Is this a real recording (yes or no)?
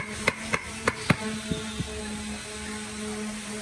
yes